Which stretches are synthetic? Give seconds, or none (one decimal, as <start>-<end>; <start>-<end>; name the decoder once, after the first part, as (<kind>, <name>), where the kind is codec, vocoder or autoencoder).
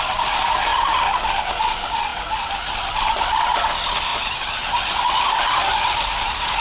none